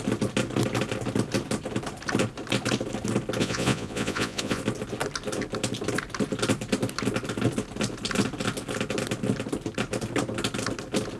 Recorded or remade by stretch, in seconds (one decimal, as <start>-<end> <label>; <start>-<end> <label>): 0.0-3.4 recorded; 3.4-4.6 remade; 4.6-11.2 recorded

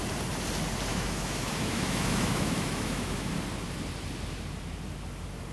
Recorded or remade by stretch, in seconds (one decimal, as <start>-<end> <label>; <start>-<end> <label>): 0.0-0.9 recorded; 0.9-3.3 remade; 3.3-5.5 recorded

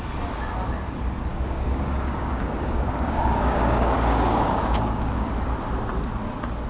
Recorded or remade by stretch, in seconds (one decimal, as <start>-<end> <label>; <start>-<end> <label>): 0.0-1.3 recorded; 1.3-5.3 remade; 5.3-6.7 recorded

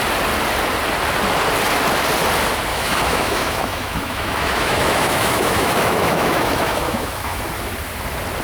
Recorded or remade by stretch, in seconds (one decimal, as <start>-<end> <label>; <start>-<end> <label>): 0.0-2.7 recorded; 2.7-7.4 remade; 7.4-8.4 recorded